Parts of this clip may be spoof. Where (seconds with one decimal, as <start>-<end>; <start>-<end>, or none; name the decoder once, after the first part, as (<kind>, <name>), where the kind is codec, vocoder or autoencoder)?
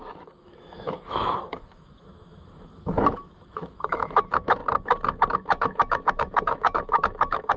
0.0-4.6 (autoencoder, DAC-VAE); 5.3-7.6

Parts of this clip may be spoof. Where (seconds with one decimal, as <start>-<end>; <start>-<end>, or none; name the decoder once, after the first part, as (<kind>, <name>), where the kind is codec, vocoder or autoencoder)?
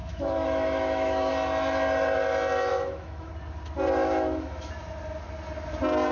0.0-1.3 (autoencoder, DAC-VAE); 2.7-3.3; 4.0-4.7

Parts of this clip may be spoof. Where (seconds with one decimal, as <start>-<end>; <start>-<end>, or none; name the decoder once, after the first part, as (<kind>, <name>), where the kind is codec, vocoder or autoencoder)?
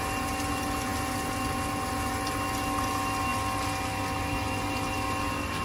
none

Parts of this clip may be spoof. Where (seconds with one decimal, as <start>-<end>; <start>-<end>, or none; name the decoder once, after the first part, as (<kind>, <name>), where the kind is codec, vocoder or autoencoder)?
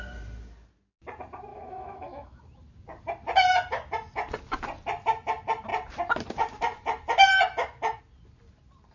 1.5-2.4 (autoencoder, DAC-VAE)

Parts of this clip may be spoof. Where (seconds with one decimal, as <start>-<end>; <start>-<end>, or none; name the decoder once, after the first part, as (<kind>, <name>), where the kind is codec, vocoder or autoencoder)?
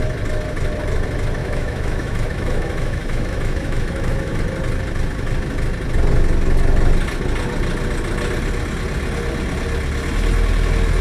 1.4-4.4 (autoencoder, DAC-VAE)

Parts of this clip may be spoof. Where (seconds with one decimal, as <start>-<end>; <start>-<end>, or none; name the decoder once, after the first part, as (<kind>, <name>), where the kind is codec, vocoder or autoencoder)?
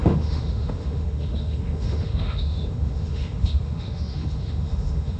0.0-5.2 (autoencoder, DAC-VAE)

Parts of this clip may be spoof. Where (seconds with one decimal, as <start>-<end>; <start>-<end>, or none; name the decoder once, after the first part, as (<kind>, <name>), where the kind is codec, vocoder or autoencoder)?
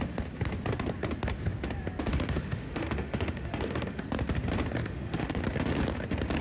2.1-4.0 (autoencoder, DAC-VAE); 4.8-5.4